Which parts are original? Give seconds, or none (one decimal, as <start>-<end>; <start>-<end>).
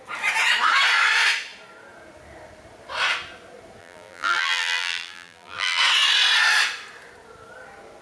0.0-3.8; 5.8-8.0